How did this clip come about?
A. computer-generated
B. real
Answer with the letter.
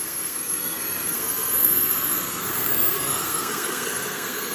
A